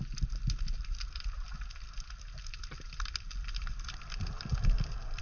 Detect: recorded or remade recorded